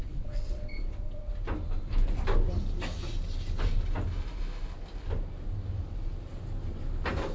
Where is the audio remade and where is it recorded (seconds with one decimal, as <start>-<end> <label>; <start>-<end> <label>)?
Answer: 0.0-1.3 remade; 1.3-7.3 recorded